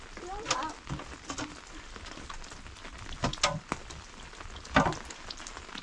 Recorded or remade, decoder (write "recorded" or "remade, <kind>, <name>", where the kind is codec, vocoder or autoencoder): recorded